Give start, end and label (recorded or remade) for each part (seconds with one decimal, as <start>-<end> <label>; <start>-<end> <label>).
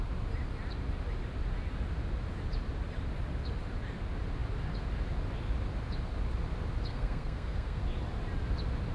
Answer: 0.0-6.9 recorded; 6.9-7.8 remade; 7.8-8.9 recorded